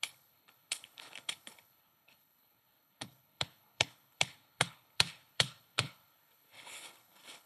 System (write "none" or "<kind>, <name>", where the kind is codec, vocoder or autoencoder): codec, HILCodec